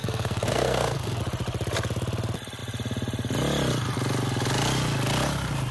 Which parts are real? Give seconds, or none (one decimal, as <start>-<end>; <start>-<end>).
1.2-5.7